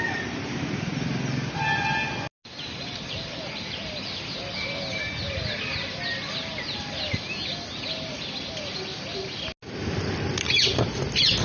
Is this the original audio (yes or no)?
yes